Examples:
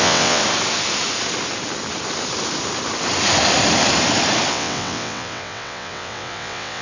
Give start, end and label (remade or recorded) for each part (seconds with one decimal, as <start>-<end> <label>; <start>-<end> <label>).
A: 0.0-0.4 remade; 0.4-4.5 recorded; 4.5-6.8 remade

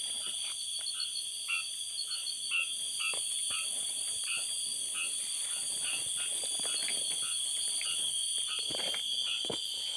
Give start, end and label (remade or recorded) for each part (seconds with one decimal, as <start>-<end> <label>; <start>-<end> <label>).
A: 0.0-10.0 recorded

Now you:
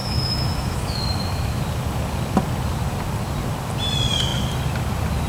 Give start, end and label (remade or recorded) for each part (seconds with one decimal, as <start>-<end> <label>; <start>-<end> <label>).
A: 0.0-1.6 remade; 1.6-5.3 recorded

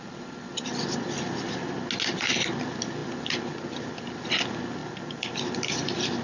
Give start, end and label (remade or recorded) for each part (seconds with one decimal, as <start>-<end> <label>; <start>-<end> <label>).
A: 0.0-6.2 recorded

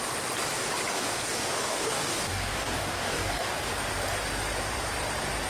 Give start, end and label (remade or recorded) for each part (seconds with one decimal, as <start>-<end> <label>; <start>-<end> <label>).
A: 0.0-0.9 recorded; 0.9-3.7 remade; 3.7-5.5 recorded